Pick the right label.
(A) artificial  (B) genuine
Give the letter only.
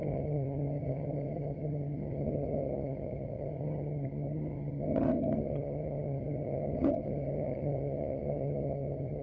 A